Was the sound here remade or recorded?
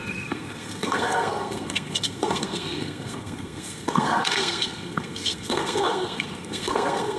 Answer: remade